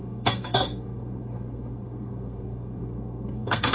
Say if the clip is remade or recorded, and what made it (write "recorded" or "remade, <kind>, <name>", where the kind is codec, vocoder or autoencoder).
remade, codec, SNAC